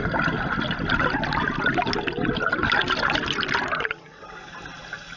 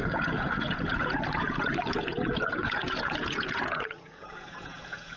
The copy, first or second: second